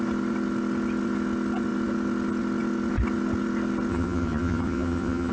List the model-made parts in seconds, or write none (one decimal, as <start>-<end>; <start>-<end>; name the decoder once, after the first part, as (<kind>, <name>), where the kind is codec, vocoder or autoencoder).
3.9-5.3 (vocoder, HiFi-GAN)